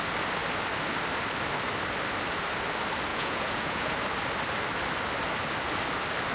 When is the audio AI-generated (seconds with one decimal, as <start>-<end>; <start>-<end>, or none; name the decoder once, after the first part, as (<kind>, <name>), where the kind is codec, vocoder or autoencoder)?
3.1-4.0 (vocoder, Vocos)